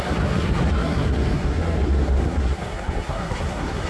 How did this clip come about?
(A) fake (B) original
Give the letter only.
A